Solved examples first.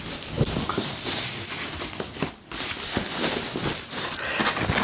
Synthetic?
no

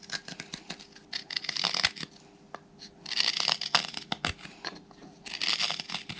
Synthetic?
no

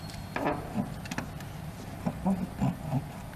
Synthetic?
no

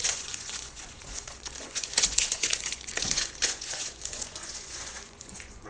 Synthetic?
yes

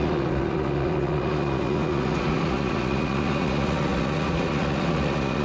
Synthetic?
yes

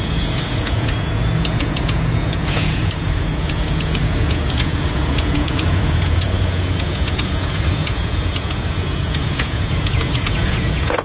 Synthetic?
yes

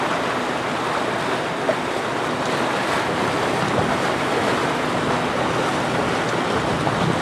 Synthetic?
no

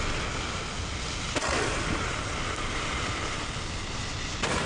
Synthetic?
no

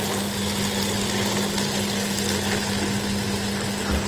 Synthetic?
no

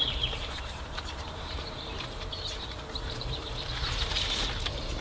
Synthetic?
yes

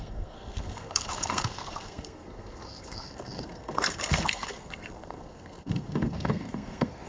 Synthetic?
yes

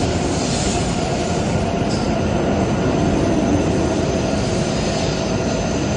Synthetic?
no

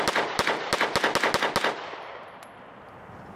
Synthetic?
no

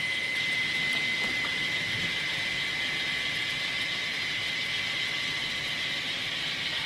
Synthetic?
yes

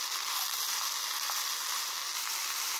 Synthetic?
no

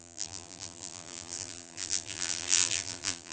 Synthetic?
yes